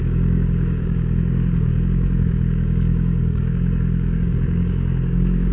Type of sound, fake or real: fake